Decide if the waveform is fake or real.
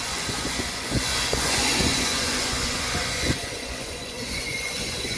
fake